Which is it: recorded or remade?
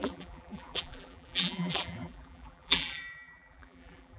remade